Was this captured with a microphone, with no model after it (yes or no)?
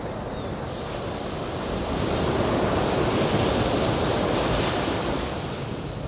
yes